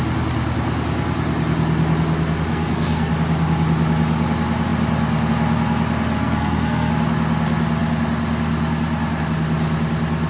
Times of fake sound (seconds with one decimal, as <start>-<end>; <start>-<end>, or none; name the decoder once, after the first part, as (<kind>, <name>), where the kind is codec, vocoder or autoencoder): 2.5-3.1 (codec, SNAC); 6.2-6.9